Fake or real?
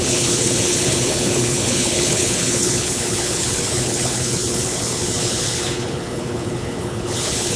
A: fake